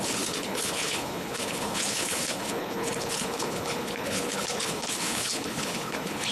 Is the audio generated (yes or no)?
yes